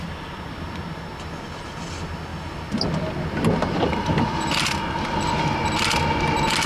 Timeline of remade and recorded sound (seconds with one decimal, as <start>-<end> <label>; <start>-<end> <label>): 0.0-6.7 recorded